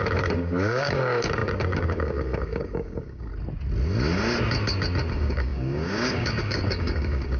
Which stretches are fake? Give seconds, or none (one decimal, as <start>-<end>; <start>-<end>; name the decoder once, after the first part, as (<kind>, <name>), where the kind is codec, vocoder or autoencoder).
0.0-3.3 (codec, DAC); 5.1-7.4